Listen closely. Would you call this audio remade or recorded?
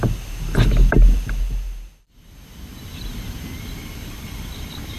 recorded